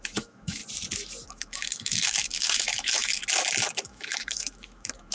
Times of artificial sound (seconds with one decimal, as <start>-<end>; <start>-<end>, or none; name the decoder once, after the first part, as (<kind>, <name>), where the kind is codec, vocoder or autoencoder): 0.0-0.6 (autoencoder, DAC-VAE); 1.3-3.2; 3.8-5.1